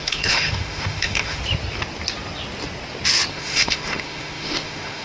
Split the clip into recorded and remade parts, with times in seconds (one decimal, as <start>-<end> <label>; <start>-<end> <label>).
0.0-1.4 remade; 1.4-3.3 recorded; 3.3-5.0 remade